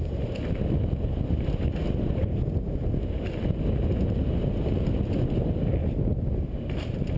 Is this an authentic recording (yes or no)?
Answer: yes